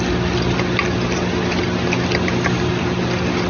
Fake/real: real